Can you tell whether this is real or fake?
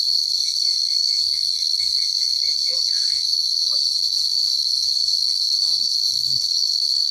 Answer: fake